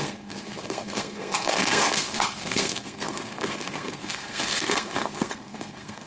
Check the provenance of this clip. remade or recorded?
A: remade